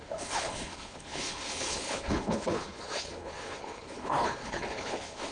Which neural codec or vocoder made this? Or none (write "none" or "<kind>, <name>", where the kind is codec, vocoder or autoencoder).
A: codec, HILCodec